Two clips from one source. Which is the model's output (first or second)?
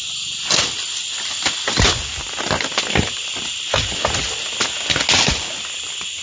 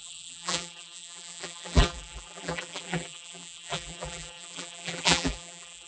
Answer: second